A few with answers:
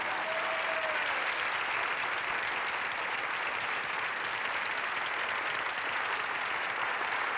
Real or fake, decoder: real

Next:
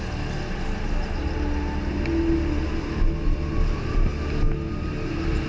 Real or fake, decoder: real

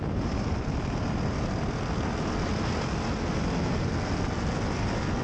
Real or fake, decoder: real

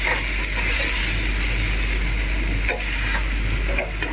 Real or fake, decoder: real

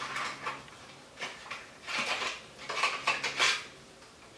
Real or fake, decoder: real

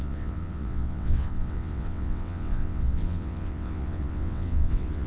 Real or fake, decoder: fake, vocoder, WaveNeXt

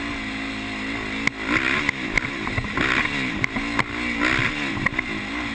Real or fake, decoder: real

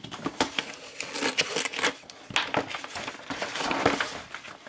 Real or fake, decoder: real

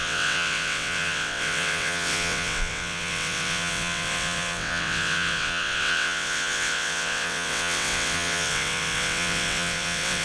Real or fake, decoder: fake, vocoder, WaveNeXt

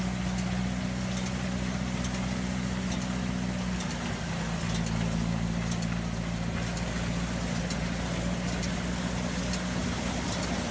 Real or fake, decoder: real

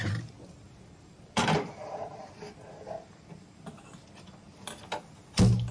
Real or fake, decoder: real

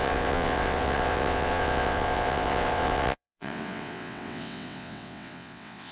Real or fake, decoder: fake, vocoder, WaveNeXt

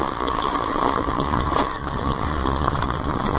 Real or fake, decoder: fake, vocoder, WaveNeXt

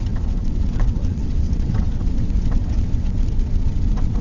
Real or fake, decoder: fake, vocoder, WaveNeXt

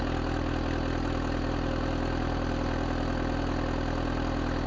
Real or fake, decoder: real